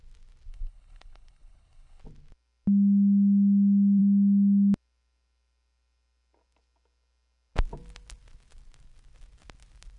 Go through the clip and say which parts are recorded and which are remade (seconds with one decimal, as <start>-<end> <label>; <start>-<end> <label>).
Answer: 0.0-0.5 recorded; 0.5-2.0 remade; 2.0-10.0 recorded